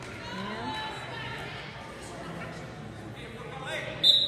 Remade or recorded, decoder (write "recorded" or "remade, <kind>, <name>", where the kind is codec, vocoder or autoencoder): recorded